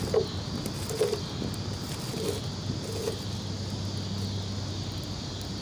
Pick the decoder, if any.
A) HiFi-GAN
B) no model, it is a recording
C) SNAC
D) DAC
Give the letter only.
B